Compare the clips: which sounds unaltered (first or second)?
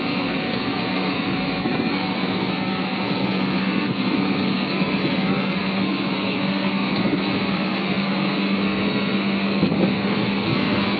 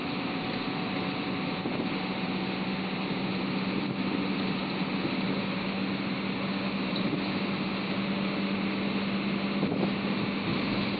second